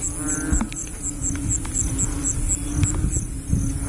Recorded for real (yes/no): yes